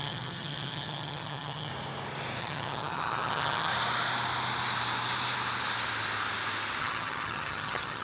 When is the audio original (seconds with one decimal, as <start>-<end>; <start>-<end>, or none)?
1.7-2.4; 3.7-6.8